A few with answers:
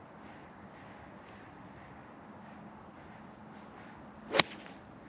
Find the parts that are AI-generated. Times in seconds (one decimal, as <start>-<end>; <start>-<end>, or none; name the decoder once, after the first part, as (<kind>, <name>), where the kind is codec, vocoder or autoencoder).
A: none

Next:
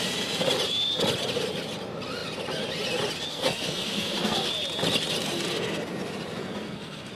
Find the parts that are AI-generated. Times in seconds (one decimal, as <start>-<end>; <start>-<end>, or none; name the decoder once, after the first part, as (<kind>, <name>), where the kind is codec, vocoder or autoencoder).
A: 3.3-4.5 (codec, SNAC); 6.4-7.1

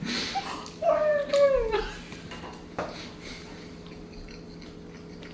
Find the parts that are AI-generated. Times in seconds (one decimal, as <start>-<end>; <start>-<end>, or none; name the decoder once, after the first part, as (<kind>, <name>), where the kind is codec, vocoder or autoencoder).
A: none